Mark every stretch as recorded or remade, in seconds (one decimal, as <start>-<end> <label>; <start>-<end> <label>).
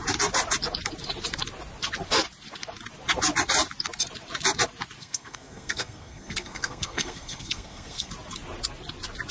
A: 0.0-5.0 recorded; 5.0-8.1 remade; 8.1-9.3 recorded